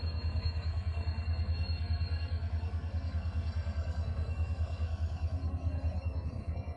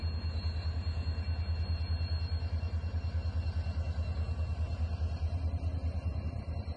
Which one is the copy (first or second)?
first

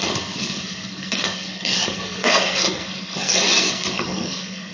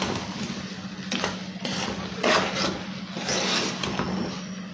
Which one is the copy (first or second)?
first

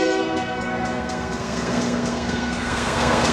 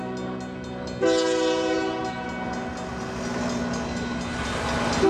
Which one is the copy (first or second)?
first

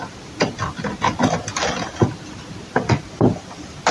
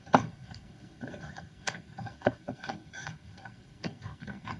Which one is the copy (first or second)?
second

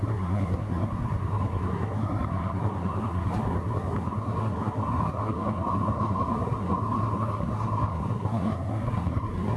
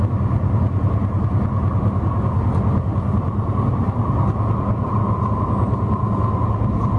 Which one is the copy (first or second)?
first